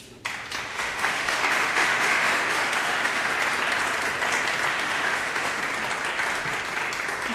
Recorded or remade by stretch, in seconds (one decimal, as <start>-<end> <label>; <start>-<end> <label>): 0.0-0.7 recorded; 0.7-3.3 remade; 3.3-4.7 recorded; 4.7-5.6 remade; 5.6-7.3 recorded